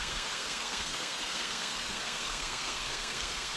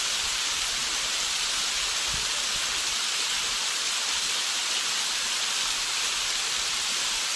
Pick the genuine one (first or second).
second